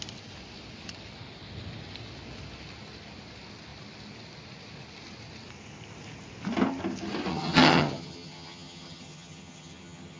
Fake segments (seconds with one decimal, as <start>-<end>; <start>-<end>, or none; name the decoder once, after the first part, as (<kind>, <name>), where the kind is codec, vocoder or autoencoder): 7.3-10.2 (vocoder, HiFi-GAN)